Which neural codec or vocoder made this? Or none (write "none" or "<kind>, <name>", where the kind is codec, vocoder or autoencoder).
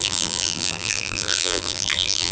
vocoder, BigVGAN v2